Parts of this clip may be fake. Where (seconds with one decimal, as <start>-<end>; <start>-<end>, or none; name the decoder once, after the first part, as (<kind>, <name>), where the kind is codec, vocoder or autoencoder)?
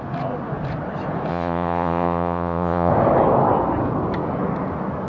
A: 1.3-2.9 (vocoder, Vocos)